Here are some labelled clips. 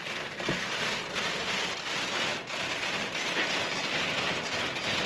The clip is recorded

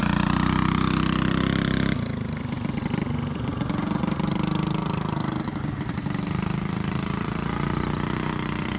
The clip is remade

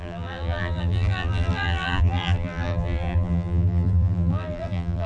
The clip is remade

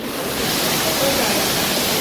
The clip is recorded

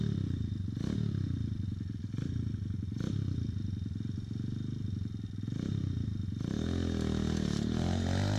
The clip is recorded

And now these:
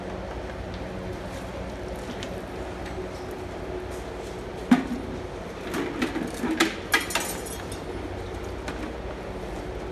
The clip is recorded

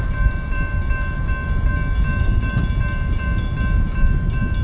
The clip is remade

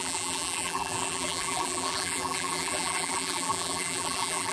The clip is remade